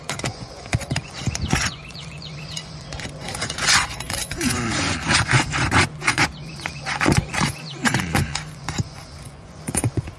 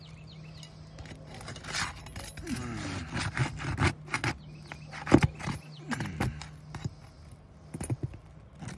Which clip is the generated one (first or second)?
first